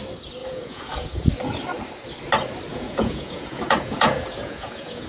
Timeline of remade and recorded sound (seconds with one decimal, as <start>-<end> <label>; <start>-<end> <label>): 0.0-0.4 recorded; 0.4-1.3 remade; 1.3-2.7 recorded; 2.7-5.1 remade